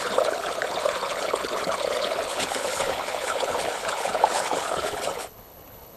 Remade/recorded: remade